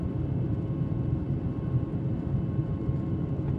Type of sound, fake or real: real